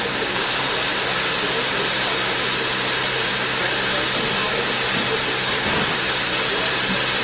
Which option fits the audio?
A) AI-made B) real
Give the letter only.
B